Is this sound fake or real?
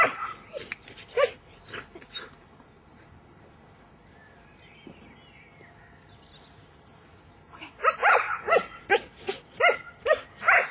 real